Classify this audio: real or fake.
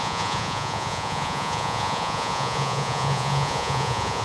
fake